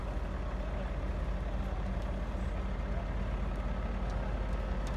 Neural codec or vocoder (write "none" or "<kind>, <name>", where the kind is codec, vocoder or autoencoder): none